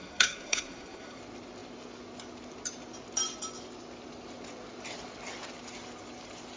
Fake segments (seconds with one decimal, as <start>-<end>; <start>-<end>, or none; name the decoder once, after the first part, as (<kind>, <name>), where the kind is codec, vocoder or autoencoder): 0.0-1.2 (codec, SNAC)